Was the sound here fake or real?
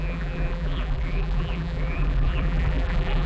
fake